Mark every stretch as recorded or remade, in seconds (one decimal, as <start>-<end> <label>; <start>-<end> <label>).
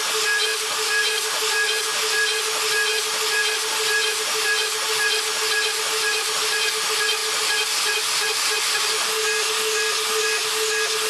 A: 0.0-11.1 recorded